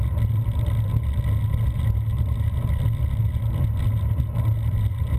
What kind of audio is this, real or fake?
real